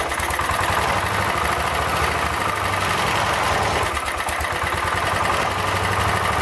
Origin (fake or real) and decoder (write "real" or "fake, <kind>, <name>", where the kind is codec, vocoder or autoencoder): real